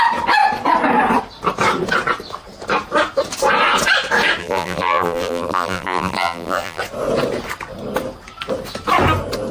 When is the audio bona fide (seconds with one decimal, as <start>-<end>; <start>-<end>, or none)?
0.0-4.4; 6.8-9.5